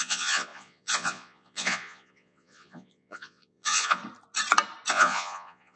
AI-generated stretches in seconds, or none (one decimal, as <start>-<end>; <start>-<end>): 0.0-4.0; 4.9-5.8